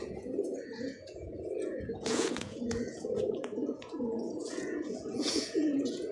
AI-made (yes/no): yes